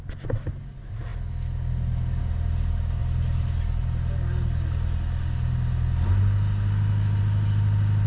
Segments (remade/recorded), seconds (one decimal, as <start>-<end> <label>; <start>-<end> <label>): 0.0-8.1 recorded